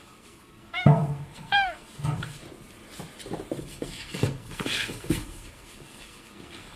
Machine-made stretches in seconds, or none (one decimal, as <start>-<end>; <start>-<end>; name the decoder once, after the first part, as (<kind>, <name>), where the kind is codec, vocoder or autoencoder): 0.0-2.4 (codec, SNAC); 3.6-6.8

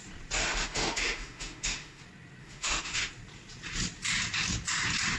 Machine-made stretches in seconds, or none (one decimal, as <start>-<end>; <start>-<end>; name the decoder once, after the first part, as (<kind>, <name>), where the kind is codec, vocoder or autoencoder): 0.4-2.0 (autoencoder, DAC-VAE); 2.4-3.1

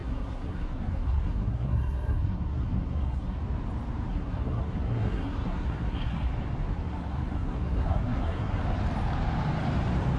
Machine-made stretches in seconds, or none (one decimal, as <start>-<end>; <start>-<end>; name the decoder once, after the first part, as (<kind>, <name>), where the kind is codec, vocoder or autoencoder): 0.0-3.4 (codec, SNAC); 4.1-6.3; 6.7-8.6

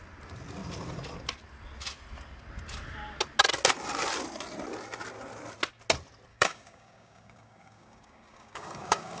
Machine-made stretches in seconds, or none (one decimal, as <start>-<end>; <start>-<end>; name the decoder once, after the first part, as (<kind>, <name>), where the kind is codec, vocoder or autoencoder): 6.3-9.2 (codec, DAC)

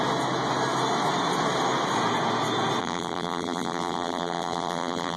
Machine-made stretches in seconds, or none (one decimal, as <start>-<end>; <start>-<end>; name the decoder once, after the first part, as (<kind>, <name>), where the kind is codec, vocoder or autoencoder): 2.8-5.2 (vocoder, BigVGAN v2)

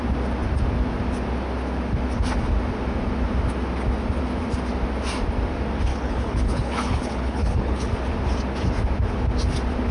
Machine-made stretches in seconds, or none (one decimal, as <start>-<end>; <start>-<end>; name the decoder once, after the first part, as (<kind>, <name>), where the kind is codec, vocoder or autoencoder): 5.9-7.9 (codec, HILCodec)